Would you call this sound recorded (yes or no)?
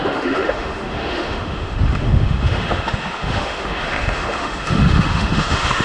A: no